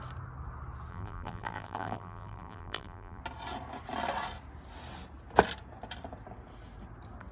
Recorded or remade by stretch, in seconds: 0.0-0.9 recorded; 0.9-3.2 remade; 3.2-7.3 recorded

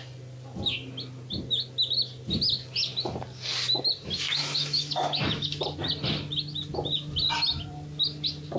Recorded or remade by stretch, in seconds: 0.0-4.4 recorded; 4.4-5.6 remade; 5.6-8.6 recorded

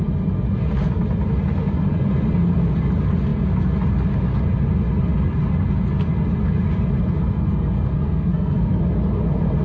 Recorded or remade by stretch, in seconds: 0.0-7.9 recorded; 7.9-8.8 remade; 8.8-9.6 recorded